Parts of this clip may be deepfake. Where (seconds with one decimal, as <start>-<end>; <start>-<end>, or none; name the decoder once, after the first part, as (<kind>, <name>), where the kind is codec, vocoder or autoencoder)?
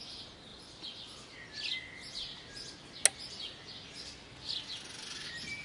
none